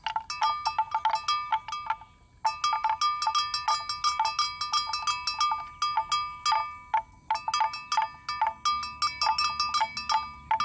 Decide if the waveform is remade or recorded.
recorded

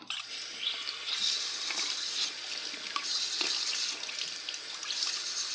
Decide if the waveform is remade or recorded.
recorded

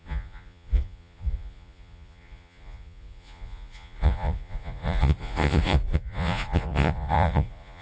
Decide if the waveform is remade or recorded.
remade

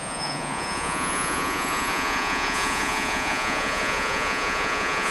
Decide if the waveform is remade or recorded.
remade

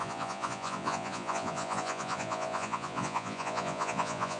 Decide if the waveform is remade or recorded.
remade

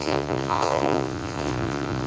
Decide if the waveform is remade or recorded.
remade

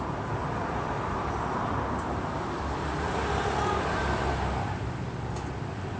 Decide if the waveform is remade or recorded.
recorded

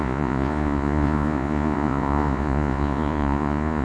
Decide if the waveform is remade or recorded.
remade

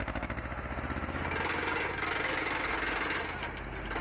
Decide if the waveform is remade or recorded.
recorded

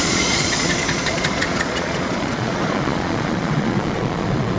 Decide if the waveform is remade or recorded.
remade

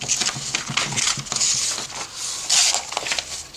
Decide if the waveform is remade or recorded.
recorded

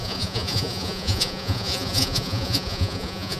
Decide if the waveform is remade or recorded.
remade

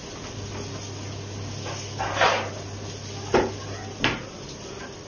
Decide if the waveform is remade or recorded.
recorded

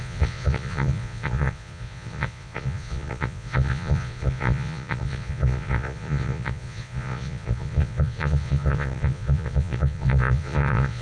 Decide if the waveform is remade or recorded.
remade